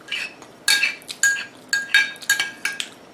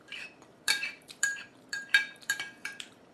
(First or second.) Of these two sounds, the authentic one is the first